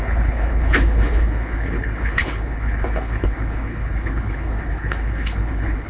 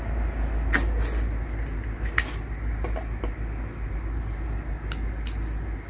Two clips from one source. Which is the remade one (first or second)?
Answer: first